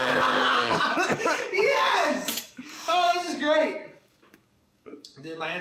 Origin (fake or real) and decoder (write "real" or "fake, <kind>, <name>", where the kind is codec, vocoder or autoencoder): fake, codec, DAC